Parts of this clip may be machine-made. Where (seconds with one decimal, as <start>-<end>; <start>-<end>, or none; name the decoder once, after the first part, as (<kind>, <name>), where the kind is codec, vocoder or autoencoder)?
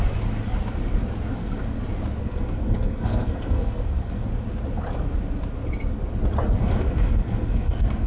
1.3-1.8 (codec, SNAC); 2.2-4.2; 6.6-8.1